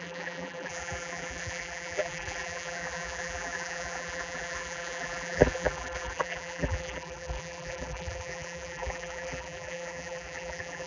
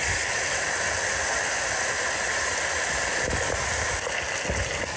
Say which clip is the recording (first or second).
second